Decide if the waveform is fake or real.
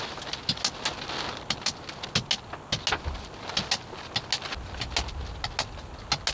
real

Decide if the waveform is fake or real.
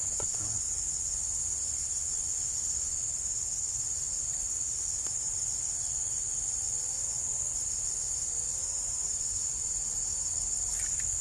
real